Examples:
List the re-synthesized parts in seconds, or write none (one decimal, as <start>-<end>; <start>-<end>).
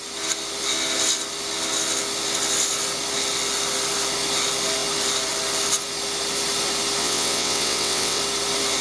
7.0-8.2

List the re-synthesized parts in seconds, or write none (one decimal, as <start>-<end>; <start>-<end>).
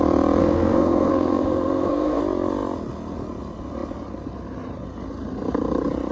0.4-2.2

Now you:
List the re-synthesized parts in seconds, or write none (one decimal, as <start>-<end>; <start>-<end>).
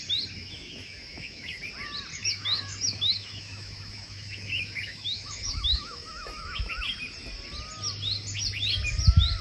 0.4-1.6; 2.1-6.7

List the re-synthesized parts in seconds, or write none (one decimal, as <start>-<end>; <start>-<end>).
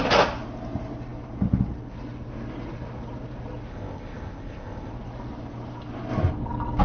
3.7-4.9